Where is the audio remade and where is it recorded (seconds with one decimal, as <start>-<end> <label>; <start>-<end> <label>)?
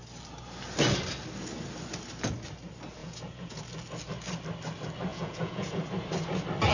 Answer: 0.0-3.0 recorded; 3.0-3.6 remade; 3.6-5.1 recorded; 5.1-5.7 remade; 5.7-6.7 recorded